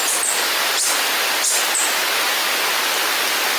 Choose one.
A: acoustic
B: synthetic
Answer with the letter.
A